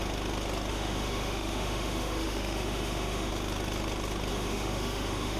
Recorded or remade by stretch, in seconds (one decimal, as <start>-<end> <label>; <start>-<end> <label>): 0.0-0.7 recorded; 0.7-3.3 remade; 3.3-4.3 recorded; 4.3-5.4 remade

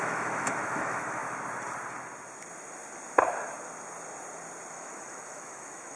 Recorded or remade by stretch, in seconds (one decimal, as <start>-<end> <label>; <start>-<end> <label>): 0.0-1.2 remade; 1.2-4.7 recorded; 4.7-6.0 remade

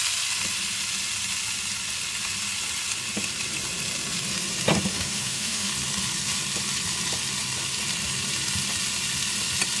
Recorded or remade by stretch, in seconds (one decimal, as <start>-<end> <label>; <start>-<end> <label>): 0.0-4.9 recorded; 4.9-5.7 remade; 5.7-9.8 recorded

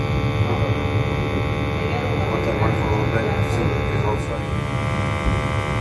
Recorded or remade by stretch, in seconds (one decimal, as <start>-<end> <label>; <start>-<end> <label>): 0.0-5.8 recorded

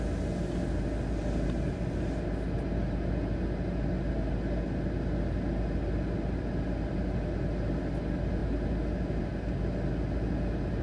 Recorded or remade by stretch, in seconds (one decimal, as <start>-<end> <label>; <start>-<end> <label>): 0.0-10.8 recorded

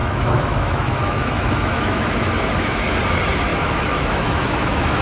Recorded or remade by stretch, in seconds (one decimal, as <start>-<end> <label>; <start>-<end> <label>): 0.0-3.0 remade; 3.0-3.5 recorded; 3.5-5.0 remade